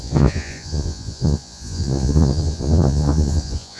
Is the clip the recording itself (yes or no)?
no